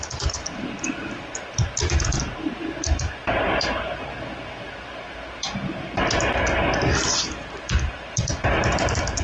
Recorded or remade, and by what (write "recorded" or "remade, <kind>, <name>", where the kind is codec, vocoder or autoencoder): remade, vocoder, BigVGAN v2